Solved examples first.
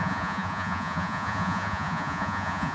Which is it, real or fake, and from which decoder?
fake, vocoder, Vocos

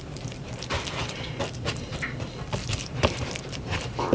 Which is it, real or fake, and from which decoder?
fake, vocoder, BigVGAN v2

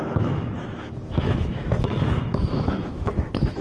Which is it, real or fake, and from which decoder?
fake, autoencoder, DAC-VAE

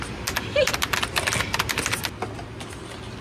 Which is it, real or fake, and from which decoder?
real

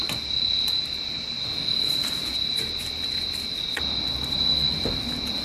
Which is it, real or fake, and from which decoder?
real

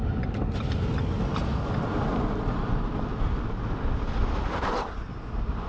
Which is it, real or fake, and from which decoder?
real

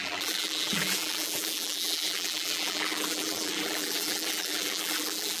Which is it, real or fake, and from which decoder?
fake, vocoder, BigVGAN v2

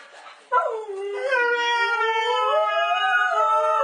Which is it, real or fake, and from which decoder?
real